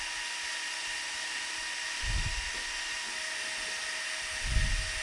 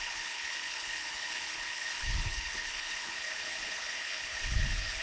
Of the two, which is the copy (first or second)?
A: second